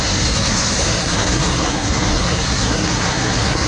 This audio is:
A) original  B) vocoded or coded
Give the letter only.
B